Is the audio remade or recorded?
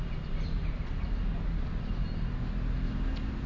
recorded